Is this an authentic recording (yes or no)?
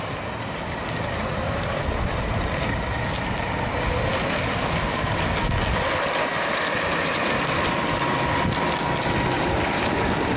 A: yes